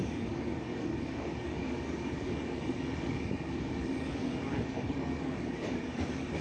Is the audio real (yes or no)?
no